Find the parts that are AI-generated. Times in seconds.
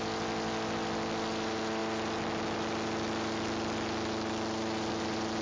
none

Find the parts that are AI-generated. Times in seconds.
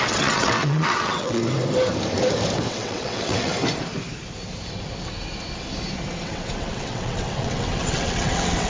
0.0-1.4 (vocoder, WaveNeXt); 2.7-3.5; 6.2-8.7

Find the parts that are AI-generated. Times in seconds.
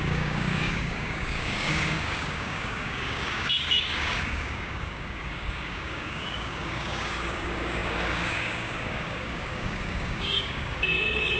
0.0-11.4 (codec, DAC)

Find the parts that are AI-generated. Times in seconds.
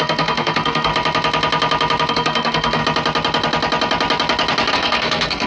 0.0-0.9 (codec, SNAC); 2.1-2.8; 4.7-5.5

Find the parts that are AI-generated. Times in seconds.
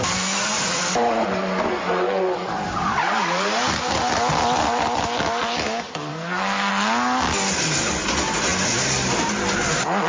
6.1-6.7 (codec, SNAC)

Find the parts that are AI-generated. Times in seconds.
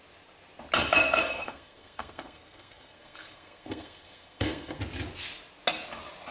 1.0-4.8 (codec, SNAC)